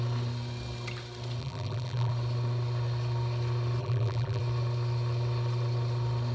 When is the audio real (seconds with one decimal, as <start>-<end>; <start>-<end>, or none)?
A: 0.0-1.4; 2.1-3.8; 4.4-6.3